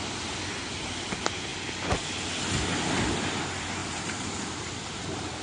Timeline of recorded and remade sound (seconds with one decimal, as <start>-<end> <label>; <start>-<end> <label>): 0.0-3.8 recorded; 3.8-5.4 remade